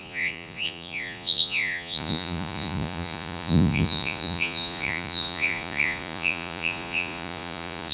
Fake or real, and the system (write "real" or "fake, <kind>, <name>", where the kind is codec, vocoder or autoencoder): fake, vocoder, Vocos